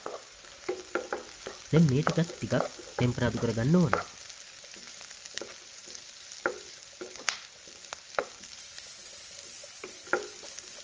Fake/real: real